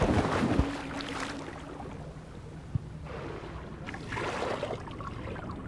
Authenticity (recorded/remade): recorded